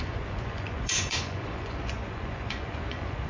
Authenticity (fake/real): fake